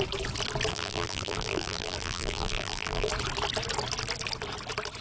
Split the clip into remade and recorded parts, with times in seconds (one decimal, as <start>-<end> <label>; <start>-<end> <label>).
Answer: 0.0-0.7 recorded; 0.7-3.1 remade; 3.1-5.0 recorded